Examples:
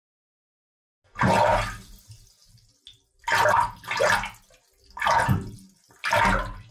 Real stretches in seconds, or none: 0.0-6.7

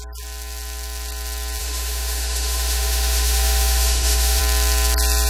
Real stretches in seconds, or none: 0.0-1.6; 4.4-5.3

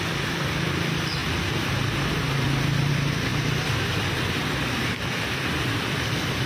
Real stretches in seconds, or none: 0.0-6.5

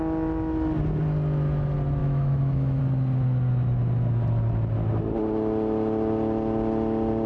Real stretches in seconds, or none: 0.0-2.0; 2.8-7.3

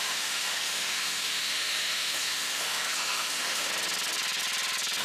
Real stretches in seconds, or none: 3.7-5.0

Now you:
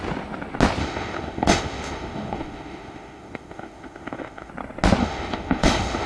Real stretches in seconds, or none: 0.0-0.8; 4.5-5.0

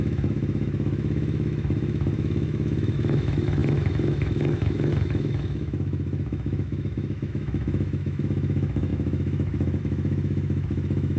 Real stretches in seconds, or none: none

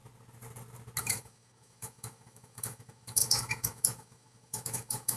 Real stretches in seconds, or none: 0.0-1.0